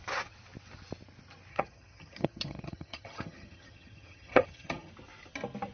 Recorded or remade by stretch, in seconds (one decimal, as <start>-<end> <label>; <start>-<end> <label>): 0.0-1.5 recorded; 1.5-4.9 remade; 4.9-5.7 recorded